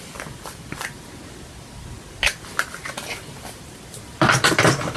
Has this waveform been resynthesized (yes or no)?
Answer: no